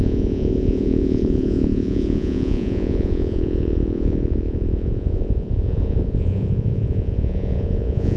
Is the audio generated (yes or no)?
yes